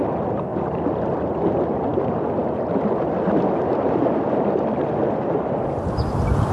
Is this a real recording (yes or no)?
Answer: yes